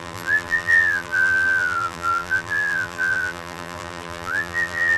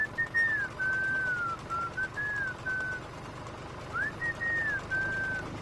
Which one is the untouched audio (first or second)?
second